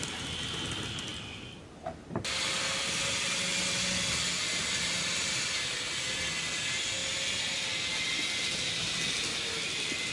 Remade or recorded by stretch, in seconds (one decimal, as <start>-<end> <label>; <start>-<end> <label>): 0.0-10.1 recorded